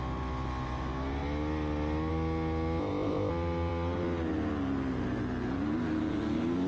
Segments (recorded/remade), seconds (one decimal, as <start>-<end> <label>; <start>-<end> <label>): 0.0-2.8 recorded; 2.8-3.3 remade; 3.3-6.7 recorded